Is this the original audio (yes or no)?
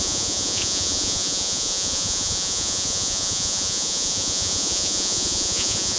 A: no